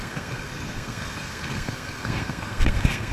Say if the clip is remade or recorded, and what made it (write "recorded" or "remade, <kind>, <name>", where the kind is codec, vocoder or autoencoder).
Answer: remade, codec, SNAC